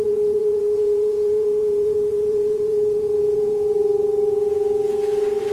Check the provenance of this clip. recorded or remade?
remade